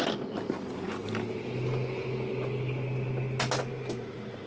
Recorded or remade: recorded